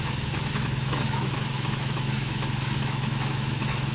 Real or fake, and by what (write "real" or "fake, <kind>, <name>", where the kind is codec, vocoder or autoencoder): fake, autoencoder, DAC-VAE